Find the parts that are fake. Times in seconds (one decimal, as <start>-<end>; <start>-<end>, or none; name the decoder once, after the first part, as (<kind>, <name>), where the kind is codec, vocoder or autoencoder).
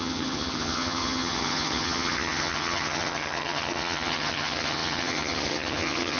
0.0-6.2 (vocoder, HiFi-GAN)